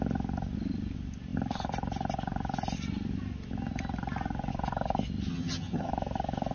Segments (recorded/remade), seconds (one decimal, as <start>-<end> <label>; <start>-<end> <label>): 0.0-5.3 recorded; 5.3-5.9 remade; 5.9-6.5 recorded